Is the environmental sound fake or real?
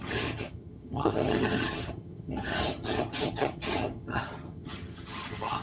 fake